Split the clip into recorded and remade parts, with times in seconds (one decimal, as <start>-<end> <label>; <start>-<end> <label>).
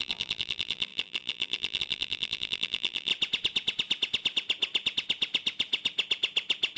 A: 0.0-3.1 remade; 3.1-6.8 recorded